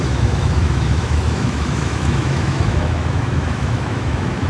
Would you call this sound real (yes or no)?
no